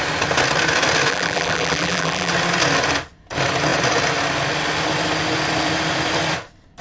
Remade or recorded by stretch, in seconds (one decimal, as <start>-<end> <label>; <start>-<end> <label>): 0.0-1.1 recorded; 1.1-2.3 remade; 2.3-6.8 recorded